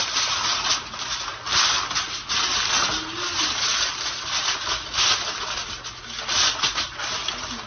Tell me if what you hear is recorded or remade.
recorded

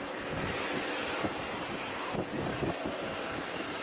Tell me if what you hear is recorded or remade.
recorded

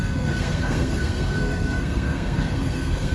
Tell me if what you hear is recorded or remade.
remade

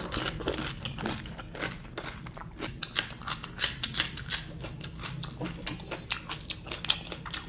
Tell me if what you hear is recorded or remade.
recorded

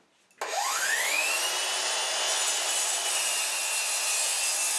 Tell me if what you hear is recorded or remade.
recorded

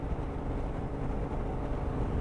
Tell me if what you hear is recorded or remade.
recorded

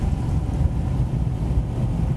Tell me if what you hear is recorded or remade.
recorded